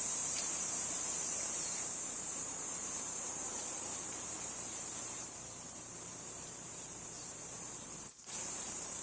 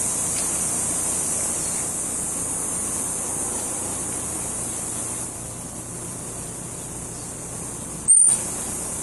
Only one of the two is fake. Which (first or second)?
first